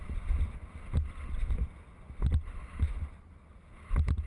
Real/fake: real